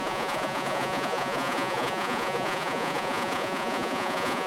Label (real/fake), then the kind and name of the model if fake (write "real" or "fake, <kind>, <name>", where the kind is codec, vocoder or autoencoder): fake, vocoder, Vocos